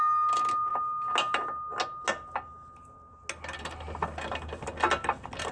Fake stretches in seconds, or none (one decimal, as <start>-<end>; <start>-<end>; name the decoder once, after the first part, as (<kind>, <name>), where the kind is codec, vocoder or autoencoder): none